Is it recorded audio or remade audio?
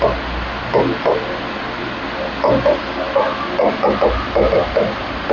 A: recorded